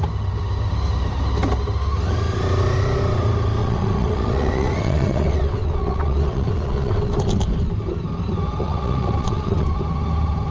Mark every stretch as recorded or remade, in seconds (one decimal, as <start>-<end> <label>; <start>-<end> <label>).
0.0-3.6 recorded; 3.6-7.1 remade; 7.1-8.6 recorded; 8.6-9.7 remade; 9.7-10.5 recorded